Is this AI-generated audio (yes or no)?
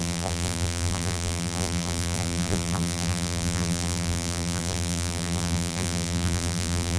yes